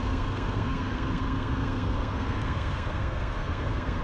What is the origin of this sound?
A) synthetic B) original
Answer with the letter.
A